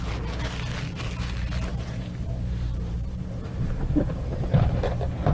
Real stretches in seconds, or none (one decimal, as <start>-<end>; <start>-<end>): 0.0-1.7